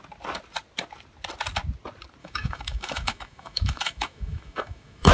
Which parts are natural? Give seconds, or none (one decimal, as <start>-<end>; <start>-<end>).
0.0-2.2